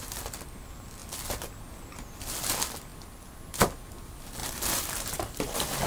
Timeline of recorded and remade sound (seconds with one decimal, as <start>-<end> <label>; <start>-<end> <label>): 0.0-4.4 recorded; 4.4-5.9 remade